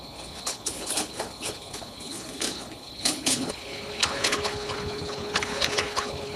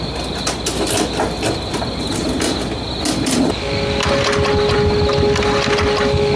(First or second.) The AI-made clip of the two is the first